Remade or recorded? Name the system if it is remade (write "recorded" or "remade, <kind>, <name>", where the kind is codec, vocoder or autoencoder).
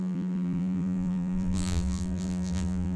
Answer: remade, vocoder, BigVGAN v2